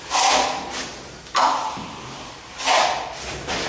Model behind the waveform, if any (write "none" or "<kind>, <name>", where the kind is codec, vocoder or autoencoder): none